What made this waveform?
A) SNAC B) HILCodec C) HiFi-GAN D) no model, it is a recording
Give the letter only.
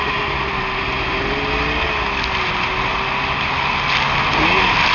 D